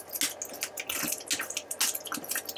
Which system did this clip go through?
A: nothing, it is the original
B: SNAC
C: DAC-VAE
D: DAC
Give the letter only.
A